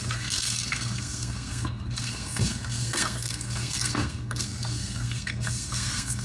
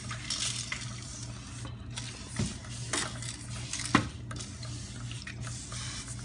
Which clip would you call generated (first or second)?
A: first